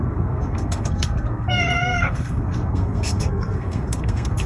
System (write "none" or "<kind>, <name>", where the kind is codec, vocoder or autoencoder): codec, SNAC